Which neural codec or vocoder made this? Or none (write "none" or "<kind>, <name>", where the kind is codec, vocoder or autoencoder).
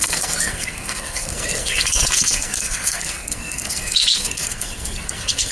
codec, SNAC